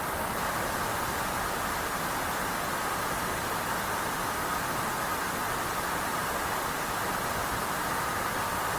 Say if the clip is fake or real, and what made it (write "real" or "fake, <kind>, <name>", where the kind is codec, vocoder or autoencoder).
real